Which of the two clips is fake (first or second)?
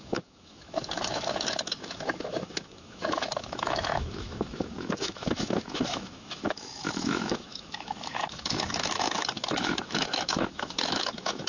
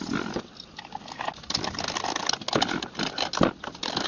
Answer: first